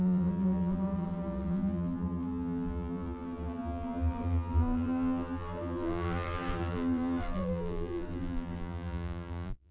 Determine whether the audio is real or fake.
fake